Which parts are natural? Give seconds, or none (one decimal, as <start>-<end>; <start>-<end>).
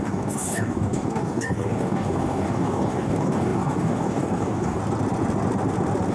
4.8-6.1